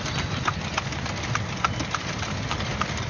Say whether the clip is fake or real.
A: real